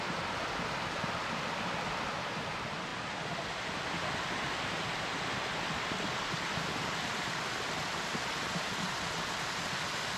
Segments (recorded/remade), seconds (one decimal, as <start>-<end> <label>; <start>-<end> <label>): 0.0-10.2 recorded